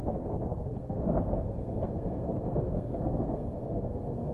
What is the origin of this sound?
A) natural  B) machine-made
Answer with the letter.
B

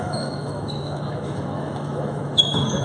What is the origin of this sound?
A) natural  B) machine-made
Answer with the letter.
B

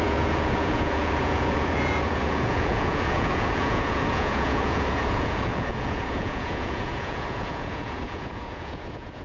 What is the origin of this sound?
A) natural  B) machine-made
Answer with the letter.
B